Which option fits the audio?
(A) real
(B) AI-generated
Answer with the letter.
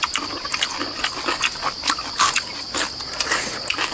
A